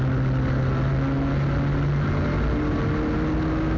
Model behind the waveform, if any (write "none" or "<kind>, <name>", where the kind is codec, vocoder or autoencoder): none